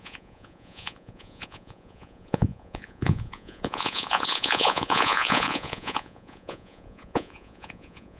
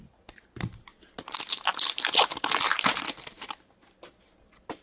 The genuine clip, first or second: second